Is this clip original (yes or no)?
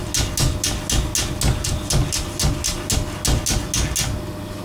yes